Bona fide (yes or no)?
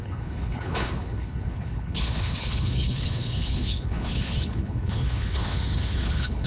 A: no